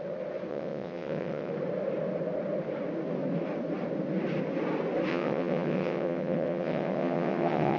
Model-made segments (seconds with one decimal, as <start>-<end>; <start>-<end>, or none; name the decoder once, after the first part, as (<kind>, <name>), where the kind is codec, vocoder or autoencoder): 0.5-1.5 (vocoder, WaveNeXt); 5.1-7.8